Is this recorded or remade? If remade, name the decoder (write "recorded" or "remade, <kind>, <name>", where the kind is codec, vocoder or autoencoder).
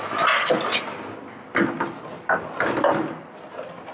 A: recorded